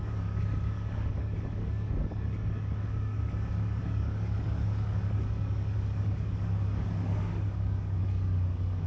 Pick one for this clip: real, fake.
fake